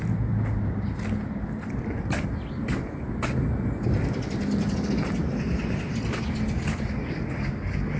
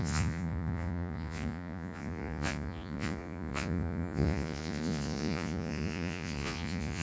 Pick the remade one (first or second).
second